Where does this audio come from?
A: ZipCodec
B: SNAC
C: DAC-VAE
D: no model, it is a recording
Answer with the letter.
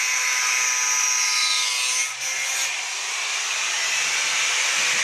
D